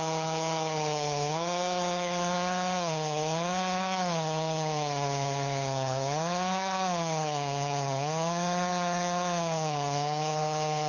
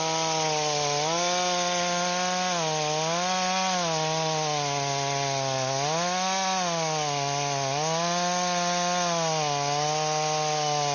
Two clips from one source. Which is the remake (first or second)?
first